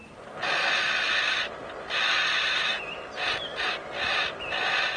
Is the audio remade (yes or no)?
no